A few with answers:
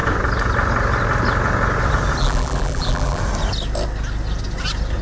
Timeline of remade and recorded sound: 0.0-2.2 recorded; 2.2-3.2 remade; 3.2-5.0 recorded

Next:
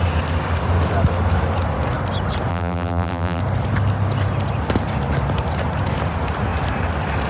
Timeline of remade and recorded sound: 0.0-2.5 recorded; 2.5-3.4 remade; 3.4-7.3 recorded

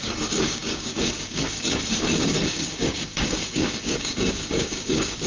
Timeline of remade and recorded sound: 0.0-5.3 remade

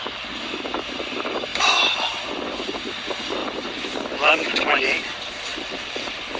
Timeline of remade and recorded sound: 0.0-1.5 recorded; 1.5-2.2 remade; 2.2-5.5 recorded; 5.5-6.4 remade

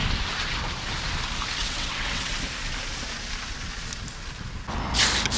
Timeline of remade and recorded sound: 0.0-1.6 recorded; 1.6-2.3 remade; 2.3-5.4 recorded

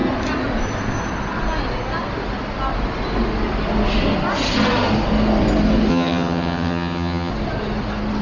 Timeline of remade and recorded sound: 0.0-5.9 recorded; 5.9-7.3 remade; 7.3-8.2 recorded

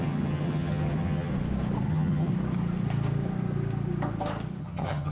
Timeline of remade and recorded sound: 0.0-1.3 remade; 1.3-1.9 recorded; 1.9-2.3 remade; 2.3-4.6 recorded; 4.6-5.1 remade